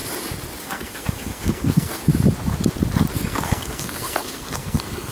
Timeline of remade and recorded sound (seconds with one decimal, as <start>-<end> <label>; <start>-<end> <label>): 0.0-0.6 recorded; 0.6-2.1 remade; 2.1-3.1 recorded; 3.1-5.1 remade